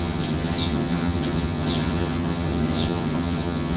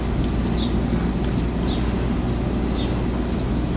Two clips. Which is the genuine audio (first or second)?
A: second